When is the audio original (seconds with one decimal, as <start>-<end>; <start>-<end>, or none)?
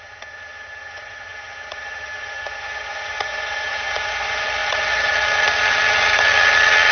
none